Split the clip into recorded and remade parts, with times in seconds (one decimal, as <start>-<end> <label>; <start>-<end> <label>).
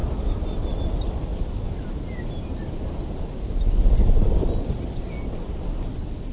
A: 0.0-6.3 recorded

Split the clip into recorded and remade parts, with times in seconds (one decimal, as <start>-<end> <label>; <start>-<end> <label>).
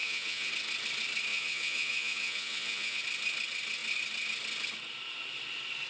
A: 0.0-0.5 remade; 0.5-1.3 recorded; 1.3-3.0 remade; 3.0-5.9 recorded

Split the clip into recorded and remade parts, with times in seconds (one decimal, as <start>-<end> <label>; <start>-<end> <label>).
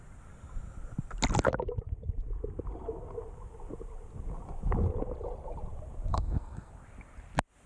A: 0.0-6.1 recorded; 6.1-6.7 remade; 6.7-7.7 recorded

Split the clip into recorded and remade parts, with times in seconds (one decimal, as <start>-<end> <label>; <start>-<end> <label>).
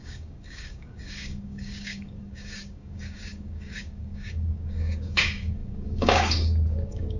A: 0.0-7.2 remade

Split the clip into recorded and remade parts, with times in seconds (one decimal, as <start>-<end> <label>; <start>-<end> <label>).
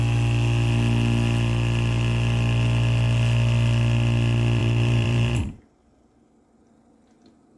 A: 0.0-4.6 recorded; 4.6-5.6 remade; 5.6-7.6 recorded